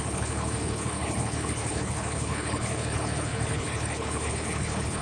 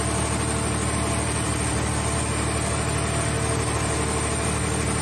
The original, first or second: second